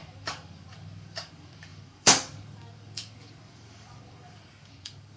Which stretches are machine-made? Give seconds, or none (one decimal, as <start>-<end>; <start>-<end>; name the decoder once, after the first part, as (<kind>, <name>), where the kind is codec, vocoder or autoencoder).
0.0-5.2 (codec, DAC)